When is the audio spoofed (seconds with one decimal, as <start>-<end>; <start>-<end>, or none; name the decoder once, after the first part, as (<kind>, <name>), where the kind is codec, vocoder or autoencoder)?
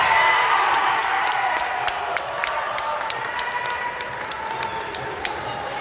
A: none